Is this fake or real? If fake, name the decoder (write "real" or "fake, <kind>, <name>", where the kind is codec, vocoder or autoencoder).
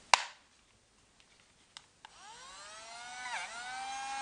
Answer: real